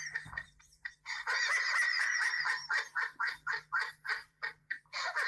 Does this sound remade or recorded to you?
remade